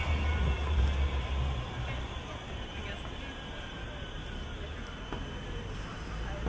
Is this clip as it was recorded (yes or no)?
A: yes